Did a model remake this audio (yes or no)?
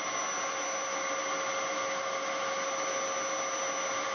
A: no